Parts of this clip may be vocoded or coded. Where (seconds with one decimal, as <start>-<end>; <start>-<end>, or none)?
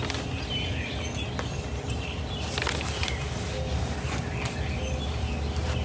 none